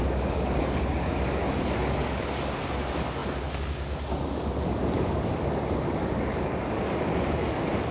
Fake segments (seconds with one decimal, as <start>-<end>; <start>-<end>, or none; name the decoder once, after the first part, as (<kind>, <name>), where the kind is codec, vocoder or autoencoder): 0.0-7.9 (codec, DAC)